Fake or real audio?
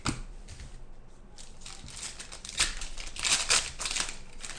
real